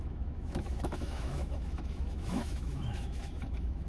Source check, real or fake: fake